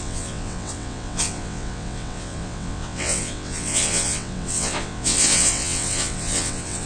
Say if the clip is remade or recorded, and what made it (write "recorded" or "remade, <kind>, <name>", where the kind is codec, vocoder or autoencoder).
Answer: remade, vocoder, WaveNeXt